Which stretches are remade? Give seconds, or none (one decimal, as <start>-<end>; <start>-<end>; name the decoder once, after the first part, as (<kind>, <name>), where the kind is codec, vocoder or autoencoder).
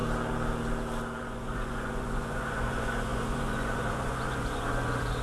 1.2-5.2 (vocoder, Vocos)